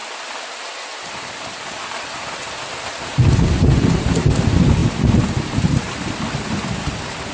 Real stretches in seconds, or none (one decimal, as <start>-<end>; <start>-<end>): 0.0-7.3